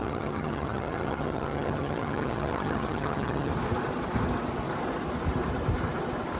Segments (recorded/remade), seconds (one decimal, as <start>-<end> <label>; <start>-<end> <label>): 0.0-3.5 remade; 3.5-6.4 recorded